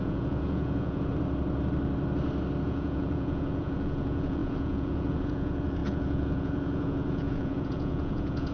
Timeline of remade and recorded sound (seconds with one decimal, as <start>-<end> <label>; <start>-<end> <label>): 0.0-1.1 remade; 1.1-2.6 recorded; 2.6-8.5 remade